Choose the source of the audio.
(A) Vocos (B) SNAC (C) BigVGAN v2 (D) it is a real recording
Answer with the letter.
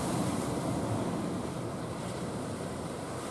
C